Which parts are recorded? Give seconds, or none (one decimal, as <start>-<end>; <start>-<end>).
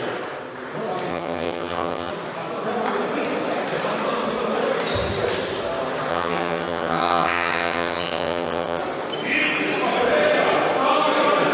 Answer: 0.0-1.1; 2.1-6.1; 8.8-11.5